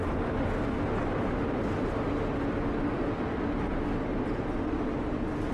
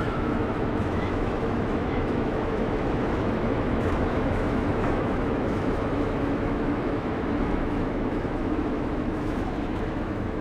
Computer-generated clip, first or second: second